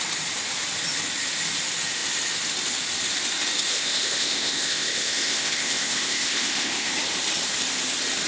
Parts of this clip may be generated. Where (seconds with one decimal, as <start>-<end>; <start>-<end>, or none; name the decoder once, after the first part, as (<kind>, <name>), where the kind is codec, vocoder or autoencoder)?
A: 3.7-6.9 (codec, ZipCodec)